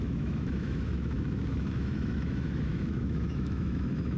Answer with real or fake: fake